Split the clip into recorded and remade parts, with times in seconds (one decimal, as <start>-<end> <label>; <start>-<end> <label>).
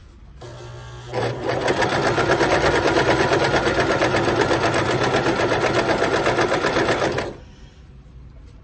0.0-8.6 recorded